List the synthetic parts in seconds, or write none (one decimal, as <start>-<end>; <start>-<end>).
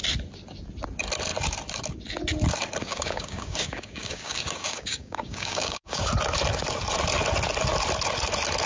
2.8-6.1